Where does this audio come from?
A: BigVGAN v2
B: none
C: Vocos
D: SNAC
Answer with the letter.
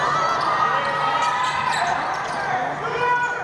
B